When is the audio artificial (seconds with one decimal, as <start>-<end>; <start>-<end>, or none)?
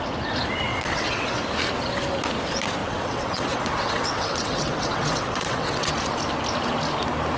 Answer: 0.7-1.4; 2.8-5.9